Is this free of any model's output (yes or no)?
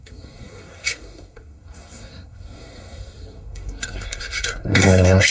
no